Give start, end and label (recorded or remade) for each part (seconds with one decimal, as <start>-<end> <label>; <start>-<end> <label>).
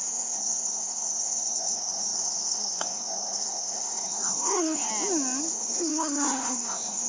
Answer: 0.0-4.9 remade; 4.9-5.5 recorded; 5.5-7.1 remade